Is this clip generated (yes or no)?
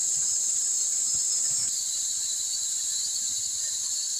yes